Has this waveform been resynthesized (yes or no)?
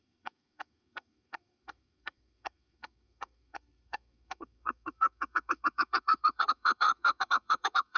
yes